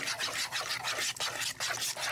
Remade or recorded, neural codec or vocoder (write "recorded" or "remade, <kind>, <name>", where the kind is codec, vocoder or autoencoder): recorded